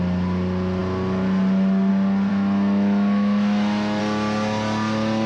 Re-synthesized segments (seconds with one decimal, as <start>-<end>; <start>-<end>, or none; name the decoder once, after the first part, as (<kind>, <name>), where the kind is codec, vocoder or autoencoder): 2.3-4.0 (autoencoder, DAC-VAE)